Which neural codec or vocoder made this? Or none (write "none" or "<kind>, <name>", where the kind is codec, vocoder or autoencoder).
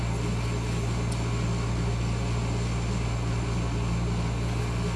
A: none